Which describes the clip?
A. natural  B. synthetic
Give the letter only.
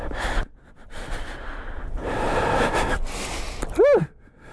A